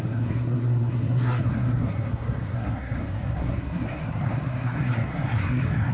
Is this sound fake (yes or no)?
yes